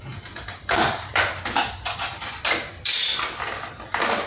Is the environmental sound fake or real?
fake